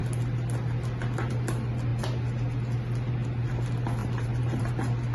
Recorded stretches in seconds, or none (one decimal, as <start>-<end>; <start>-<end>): 0.0-4.0; 4.6-5.1